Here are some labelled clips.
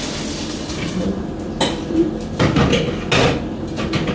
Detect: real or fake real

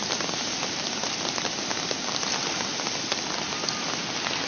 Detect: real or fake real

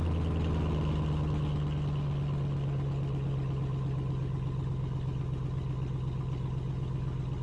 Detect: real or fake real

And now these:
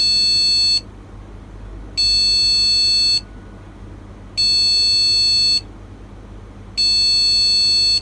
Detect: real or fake real